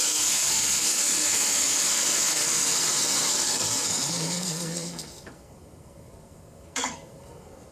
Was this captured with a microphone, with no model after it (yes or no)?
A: no